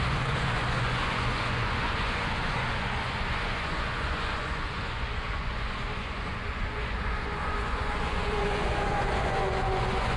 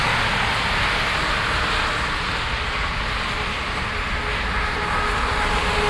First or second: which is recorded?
second